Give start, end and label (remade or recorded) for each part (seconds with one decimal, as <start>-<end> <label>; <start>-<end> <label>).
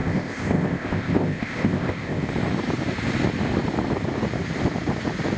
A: 0.0-2.3 remade; 2.3-5.4 recorded